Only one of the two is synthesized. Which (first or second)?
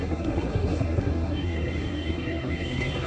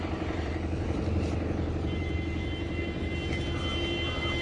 first